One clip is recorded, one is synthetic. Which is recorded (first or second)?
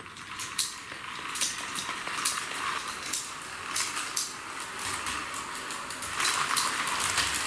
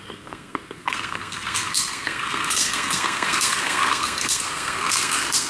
first